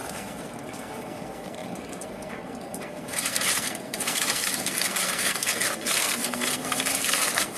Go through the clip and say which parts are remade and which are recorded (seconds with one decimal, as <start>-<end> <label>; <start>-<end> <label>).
0.0-7.6 remade